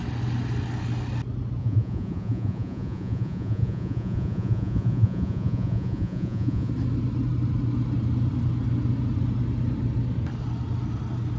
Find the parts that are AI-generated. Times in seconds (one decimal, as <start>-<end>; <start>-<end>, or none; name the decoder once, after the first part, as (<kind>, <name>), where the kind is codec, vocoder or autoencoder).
1.6-6.7 (vocoder, Vocos)